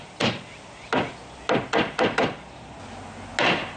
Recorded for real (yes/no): yes